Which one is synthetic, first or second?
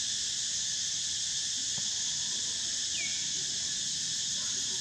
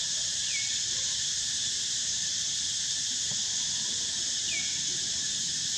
second